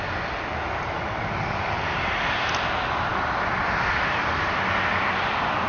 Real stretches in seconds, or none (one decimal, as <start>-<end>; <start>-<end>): 0.0-5.7